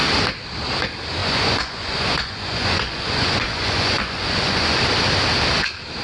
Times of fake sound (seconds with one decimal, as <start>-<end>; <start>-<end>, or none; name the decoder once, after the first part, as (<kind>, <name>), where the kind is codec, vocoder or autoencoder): 1.2-4.8 (vocoder, Vocos)

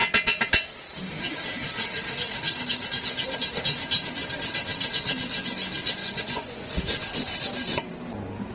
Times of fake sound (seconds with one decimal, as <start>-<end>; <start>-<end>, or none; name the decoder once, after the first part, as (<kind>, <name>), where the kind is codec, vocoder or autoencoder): 6.0-6.7 (vocoder, Vocos)

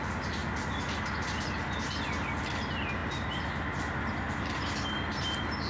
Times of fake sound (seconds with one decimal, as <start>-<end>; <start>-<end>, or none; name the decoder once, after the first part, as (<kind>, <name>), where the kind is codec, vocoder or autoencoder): none

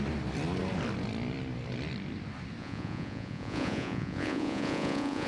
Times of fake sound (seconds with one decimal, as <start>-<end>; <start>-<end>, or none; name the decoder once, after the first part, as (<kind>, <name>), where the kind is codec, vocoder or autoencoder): 2.6-5.3 (vocoder, Vocos)

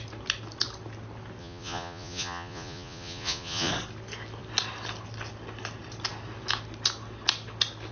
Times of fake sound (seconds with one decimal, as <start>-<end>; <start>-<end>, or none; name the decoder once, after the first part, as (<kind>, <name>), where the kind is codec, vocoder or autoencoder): 1.4-3.7 (vocoder, Vocos)

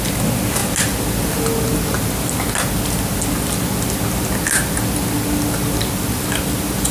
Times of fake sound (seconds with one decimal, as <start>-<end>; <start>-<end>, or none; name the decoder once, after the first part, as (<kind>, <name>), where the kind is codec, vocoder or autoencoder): none

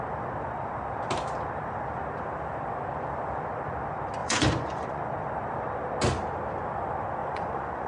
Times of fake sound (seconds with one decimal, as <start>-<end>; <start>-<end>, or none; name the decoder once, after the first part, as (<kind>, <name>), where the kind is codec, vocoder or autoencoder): 4.2-5.0 (vocoder, Vocos); 7.2-7.9